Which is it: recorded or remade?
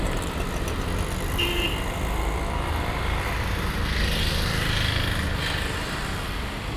remade